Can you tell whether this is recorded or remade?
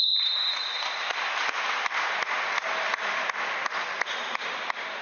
recorded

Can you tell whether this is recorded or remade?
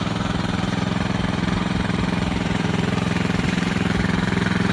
remade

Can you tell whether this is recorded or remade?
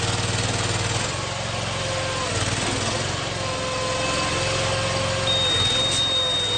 recorded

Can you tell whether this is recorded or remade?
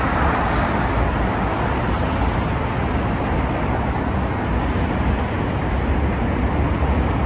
recorded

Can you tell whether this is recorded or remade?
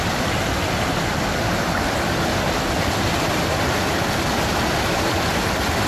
recorded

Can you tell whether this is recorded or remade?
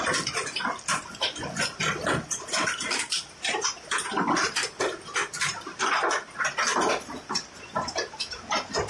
recorded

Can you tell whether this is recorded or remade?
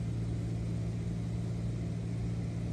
recorded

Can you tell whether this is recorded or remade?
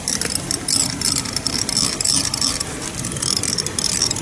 recorded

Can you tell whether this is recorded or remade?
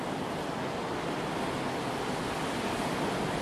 recorded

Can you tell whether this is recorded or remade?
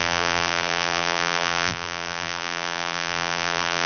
remade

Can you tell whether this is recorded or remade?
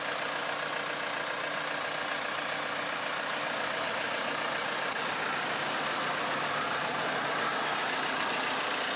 recorded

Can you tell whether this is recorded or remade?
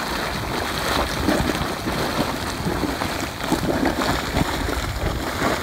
recorded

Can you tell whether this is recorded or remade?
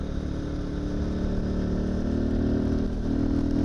recorded